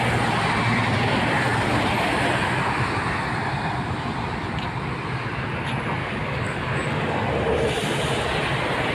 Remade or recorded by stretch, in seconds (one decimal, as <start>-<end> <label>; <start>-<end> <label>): 0.0-6.0 recorded; 6.0-7.3 remade; 7.3-8.9 recorded